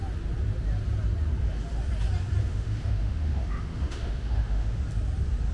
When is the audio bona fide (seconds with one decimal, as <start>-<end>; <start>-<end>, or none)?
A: 0.0-2.4; 4.8-5.5